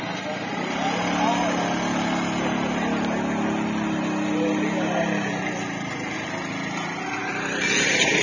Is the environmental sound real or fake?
real